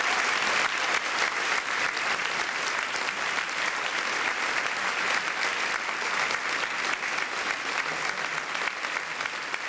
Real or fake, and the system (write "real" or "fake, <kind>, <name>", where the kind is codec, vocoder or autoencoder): real